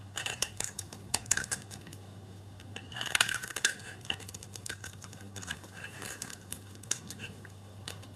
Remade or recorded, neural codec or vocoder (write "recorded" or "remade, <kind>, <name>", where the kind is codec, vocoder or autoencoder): remade, codec, SNAC